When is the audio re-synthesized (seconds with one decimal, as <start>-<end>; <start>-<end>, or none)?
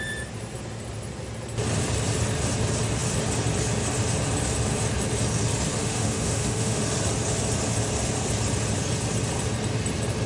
5.8-6.8